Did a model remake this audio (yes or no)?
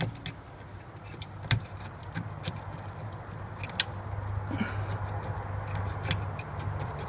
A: no